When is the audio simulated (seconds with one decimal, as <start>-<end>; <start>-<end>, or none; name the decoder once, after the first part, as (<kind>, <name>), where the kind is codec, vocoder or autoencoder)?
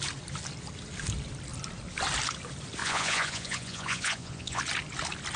2.8-4.6 (vocoder, Vocos)